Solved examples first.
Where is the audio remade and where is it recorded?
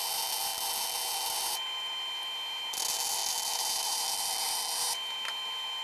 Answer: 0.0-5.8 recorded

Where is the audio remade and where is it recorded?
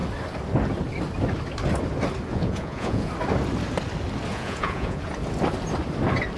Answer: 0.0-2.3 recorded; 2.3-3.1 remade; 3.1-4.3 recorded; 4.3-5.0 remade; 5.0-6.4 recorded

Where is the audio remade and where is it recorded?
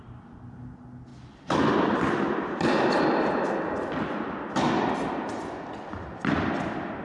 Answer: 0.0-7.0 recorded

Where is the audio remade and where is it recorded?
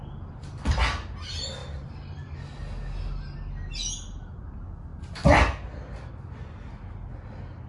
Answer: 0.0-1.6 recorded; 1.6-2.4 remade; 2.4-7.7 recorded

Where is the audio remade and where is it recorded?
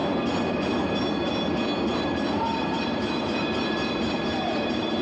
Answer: 0.0-1.0 remade; 1.0-1.9 recorded; 1.9-5.0 remade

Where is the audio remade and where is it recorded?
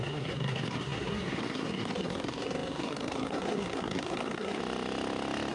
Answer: 0.0-4.6 remade; 4.6-5.5 recorded